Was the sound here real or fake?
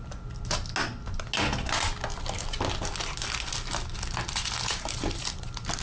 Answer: real